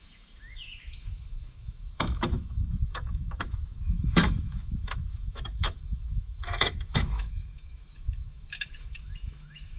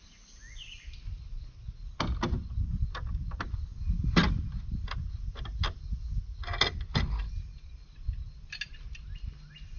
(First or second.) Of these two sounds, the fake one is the first